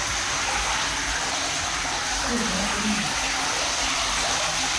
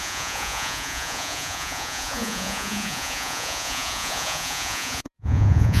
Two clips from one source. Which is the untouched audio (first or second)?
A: first